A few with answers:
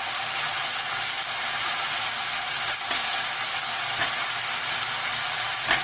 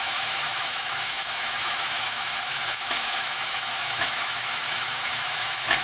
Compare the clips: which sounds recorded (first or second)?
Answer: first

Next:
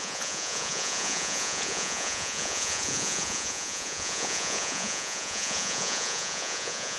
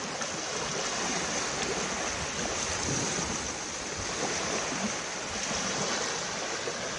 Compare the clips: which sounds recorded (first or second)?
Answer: second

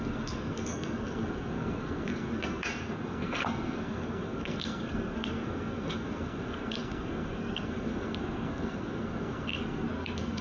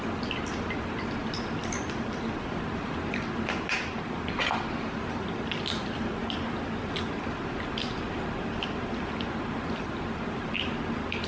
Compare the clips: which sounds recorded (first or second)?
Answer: second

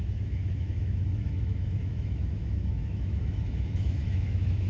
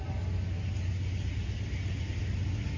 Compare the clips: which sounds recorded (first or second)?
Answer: second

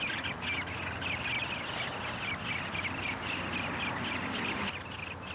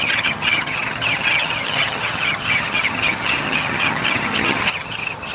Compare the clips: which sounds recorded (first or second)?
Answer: first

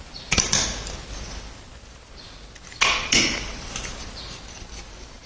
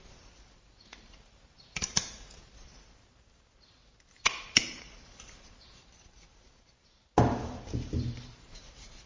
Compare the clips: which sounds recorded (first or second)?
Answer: first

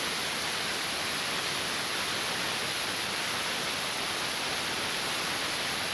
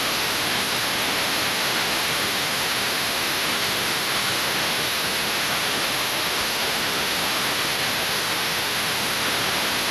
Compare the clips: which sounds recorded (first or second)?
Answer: first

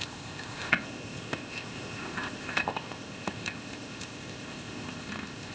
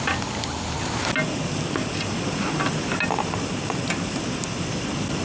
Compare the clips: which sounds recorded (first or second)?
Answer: second